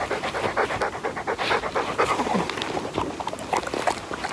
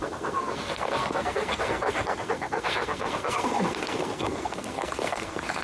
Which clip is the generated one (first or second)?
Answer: second